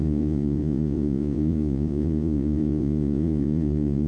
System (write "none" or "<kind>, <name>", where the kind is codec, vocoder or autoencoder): vocoder, Vocos